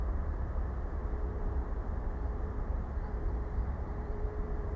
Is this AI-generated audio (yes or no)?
yes